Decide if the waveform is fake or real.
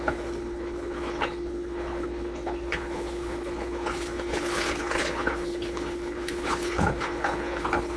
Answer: fake